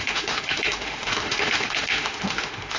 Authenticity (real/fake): fake